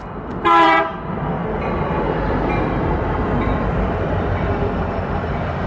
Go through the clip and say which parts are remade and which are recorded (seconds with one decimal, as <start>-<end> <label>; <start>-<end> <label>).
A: 0.0-1.4 remade; 1.4-3.4 recorded; 3.4-5.7 remade